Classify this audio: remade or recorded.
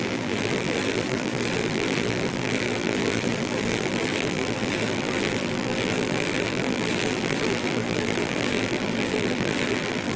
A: remade